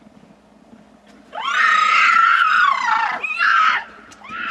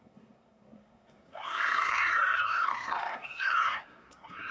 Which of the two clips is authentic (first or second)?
first